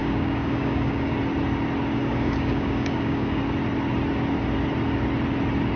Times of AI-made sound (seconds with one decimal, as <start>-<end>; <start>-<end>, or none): 0.0-1.2; 2.0-3.4